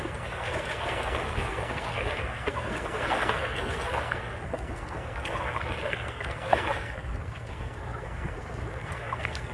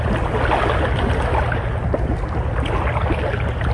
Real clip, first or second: second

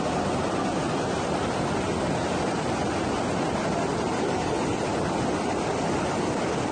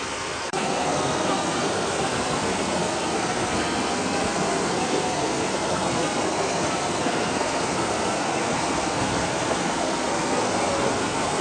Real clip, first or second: first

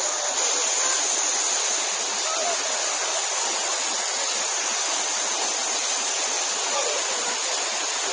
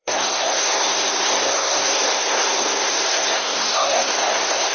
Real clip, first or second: first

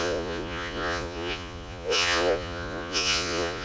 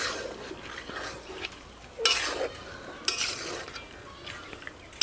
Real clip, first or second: second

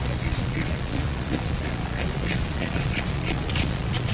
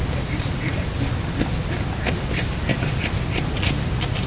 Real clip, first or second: second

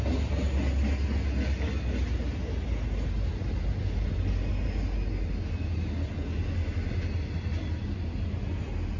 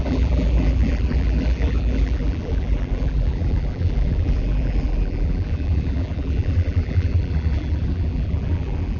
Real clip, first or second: first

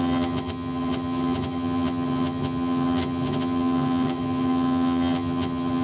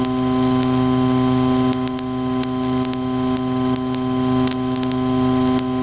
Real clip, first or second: second